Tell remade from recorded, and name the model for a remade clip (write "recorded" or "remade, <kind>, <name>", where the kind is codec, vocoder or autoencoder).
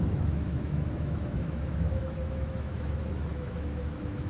remade, autoencoder, DAC-VAE